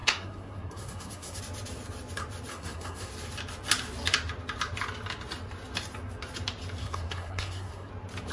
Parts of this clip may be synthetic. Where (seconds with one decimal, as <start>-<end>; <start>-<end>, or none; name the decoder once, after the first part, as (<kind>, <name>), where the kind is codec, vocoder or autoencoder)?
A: 0.0-1.4 (codec, SNAC); 2.5-3.1; 6.8-7.9